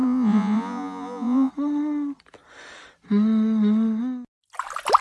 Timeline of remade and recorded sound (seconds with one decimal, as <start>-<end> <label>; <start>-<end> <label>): 0.0-1.5 remade; 1.5-5.0 recorded